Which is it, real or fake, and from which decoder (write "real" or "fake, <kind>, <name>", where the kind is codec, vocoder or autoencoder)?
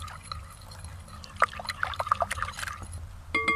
real